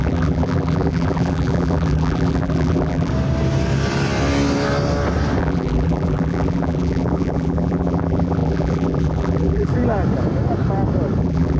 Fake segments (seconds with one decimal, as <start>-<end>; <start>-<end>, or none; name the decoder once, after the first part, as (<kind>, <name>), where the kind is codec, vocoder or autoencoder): 0.0-3.1 (vocoder, BigVGAN v2); 5.4-9.7; 11.2-11.6